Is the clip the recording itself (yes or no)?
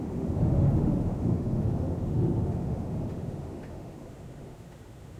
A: no